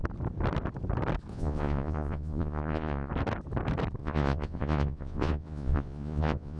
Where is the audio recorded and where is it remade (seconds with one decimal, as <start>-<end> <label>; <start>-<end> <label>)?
0.0-1.3 recorded; 1.3-3.1 remade; 3.1-4.0 recorded; 4.0-6.6 remade